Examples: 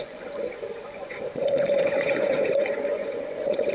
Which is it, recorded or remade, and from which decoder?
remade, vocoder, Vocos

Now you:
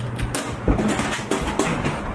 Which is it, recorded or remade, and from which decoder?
recorded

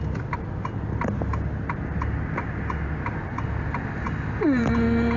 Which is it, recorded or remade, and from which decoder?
recorded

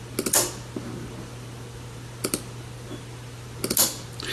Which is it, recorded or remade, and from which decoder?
recorded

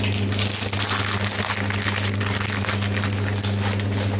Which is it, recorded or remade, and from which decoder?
recorded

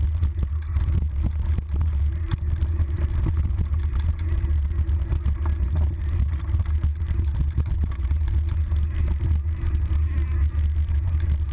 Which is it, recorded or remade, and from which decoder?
recorded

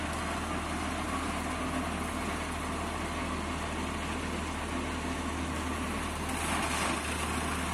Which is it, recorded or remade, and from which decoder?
recorded